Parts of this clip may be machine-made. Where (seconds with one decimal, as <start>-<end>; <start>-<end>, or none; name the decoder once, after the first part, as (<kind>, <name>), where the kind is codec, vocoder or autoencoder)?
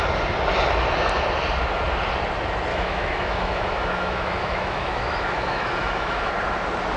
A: 2.7-6.3 (autoencoder, DAC-VAE)